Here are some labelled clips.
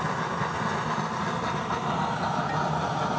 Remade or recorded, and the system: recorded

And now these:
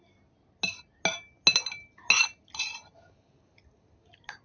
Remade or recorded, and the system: recorded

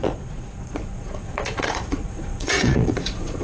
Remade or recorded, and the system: remade, vocoder, Vocos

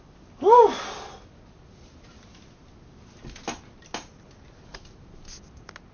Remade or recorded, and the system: recorded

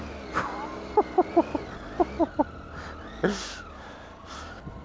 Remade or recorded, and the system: recorded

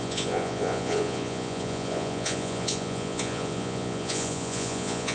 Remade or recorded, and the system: remade, vocoder, Vocos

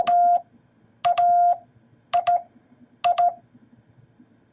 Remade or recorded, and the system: recorded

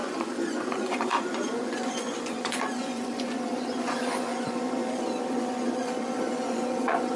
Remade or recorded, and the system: remade, vocoder, Vocos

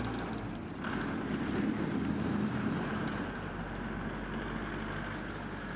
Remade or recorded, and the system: recorded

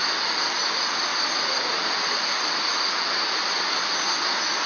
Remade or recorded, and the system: recorded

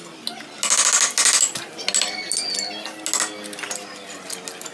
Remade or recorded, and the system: recorded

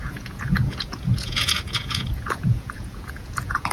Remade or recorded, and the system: remade, vocoder, Vocos